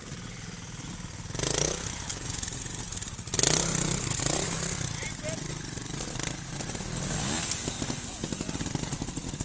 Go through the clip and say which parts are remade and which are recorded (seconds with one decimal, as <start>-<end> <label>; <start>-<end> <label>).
0.0-9.4 recorded